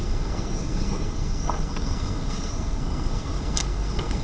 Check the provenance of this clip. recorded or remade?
remade